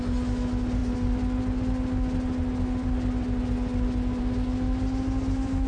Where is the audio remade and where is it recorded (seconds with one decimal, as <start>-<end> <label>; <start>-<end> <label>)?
0.0-5.7 recorded